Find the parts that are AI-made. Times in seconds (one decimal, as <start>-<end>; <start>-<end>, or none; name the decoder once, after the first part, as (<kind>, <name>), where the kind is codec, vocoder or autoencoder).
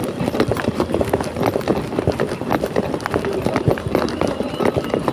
0.0-1.0 (vocoder, BigVGAN v2); 1.7-2.8